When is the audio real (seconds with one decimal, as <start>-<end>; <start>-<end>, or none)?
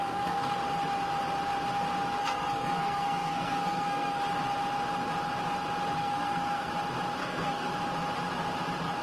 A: 0.6-2.2; 4.2-6.0; 6.7-7.2; 7.7-9.0